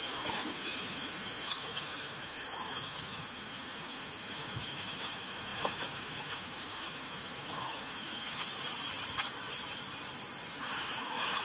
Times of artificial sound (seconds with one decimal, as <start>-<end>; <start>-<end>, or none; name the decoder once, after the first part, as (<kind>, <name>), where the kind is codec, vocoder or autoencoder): 0.0-8.5 (autoencoder, DAC-VAE); 10.5-11.4